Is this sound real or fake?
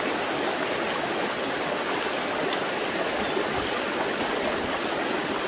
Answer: real